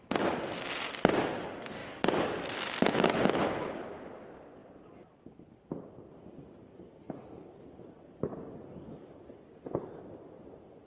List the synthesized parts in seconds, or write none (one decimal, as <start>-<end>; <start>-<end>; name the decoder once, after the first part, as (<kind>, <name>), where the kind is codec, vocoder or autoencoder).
none